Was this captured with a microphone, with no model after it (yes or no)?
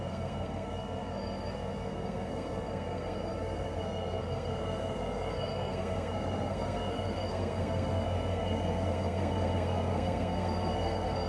no